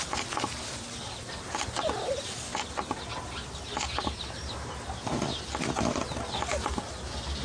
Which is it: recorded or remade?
recorded